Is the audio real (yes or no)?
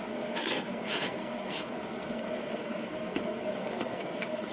no